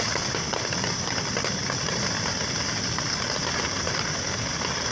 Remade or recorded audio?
recorded